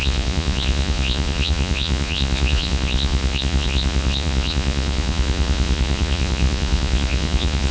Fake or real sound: fake